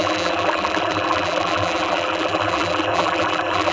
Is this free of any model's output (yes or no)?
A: no